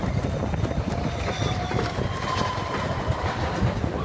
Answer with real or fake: real